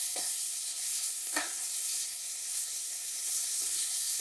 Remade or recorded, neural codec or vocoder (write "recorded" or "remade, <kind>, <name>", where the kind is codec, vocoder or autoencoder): remade, codec, SNAC